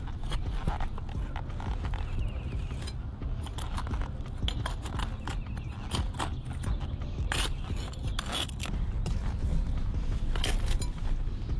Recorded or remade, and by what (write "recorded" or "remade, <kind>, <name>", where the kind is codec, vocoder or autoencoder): recorded